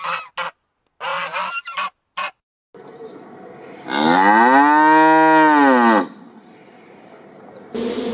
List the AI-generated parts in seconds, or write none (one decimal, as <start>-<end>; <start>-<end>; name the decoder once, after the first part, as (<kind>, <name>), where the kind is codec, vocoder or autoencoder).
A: 1.1-1.9 (vocoder, BigVGAN v2)